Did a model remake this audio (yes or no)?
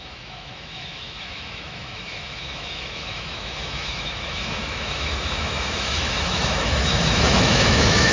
yes